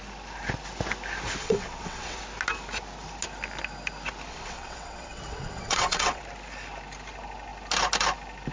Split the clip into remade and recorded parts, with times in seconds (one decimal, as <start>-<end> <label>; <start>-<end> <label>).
0.0-1.4 recorded; 1.4-2.2 remade; 2.2-4.3 recorded; 4.3-6.2 remade; 6.2-8.5 recorded